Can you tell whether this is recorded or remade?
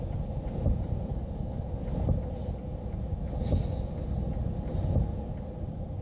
recorded